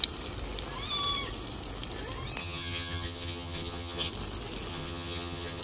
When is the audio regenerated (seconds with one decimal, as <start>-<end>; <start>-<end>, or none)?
2.4-4.1; 4.7-5.6